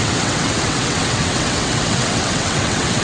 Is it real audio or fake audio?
fake